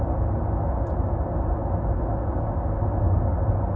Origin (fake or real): real